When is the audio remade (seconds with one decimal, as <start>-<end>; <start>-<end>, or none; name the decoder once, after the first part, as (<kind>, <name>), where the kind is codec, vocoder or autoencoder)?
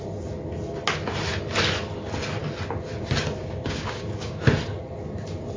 3.4-4.4 (codec, DAC)